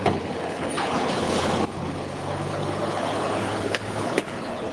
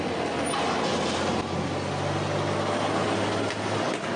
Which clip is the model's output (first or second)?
first